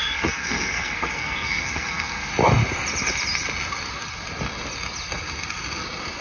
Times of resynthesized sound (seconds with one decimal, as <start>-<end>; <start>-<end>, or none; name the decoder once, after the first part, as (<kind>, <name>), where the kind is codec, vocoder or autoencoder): 0.0-2.3 (codec, SNAC)